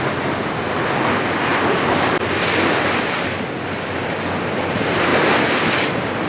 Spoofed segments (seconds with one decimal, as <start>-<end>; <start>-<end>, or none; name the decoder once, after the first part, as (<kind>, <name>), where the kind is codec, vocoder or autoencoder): 1.5-4.2 (vocoder, BigVGAN v2); 5.1-6.3